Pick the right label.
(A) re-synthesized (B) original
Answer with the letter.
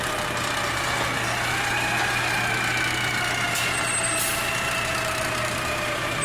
B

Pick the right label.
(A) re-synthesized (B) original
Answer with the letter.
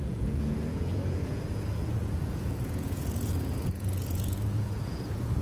A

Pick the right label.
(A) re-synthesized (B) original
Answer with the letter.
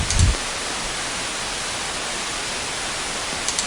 B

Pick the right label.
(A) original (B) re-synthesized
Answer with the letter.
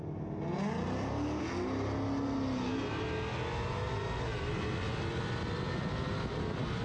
A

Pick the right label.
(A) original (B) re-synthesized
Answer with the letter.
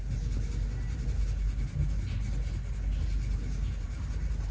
A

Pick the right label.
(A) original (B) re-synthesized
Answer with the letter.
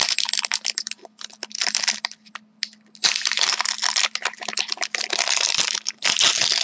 A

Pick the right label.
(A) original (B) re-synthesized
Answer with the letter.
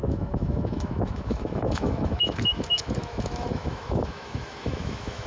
B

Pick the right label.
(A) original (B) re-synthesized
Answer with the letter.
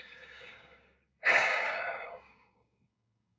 B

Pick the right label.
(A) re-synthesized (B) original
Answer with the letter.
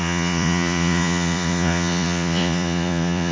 A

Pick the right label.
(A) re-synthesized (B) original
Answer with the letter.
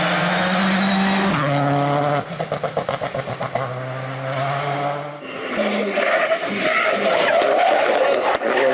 B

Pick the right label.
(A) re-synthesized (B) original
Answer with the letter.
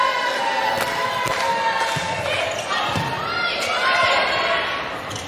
B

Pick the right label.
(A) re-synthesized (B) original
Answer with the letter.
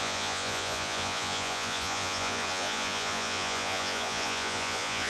A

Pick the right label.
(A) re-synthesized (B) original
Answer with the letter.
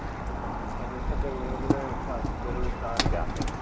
B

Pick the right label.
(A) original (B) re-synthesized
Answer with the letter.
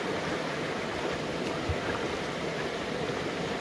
A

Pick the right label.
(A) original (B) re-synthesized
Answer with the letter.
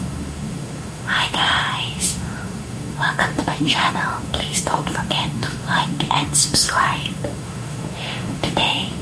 B